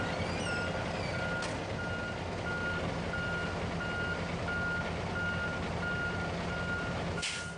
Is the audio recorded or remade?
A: recorded